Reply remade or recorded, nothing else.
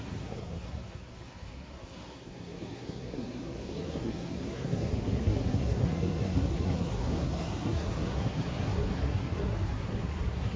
remade